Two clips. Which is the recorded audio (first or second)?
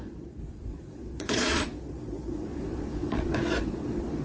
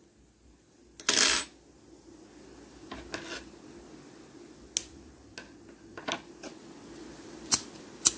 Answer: second